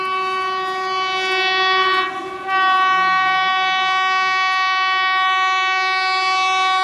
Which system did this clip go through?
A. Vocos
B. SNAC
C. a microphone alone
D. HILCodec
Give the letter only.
C